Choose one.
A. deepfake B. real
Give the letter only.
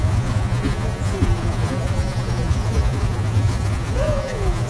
A